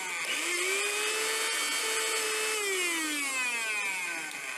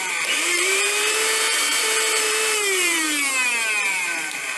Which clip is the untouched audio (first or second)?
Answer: first